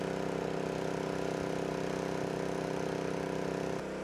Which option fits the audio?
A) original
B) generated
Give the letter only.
A